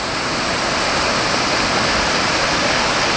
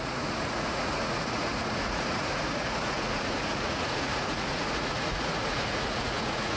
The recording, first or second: first